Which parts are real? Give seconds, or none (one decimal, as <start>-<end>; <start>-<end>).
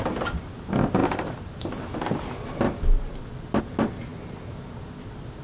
0.0-4.1; 4.8-5.4